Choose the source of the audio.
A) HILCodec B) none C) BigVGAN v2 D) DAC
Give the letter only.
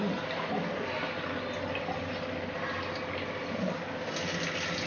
B